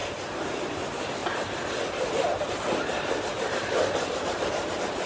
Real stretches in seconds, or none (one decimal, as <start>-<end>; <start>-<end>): 1.2-4.1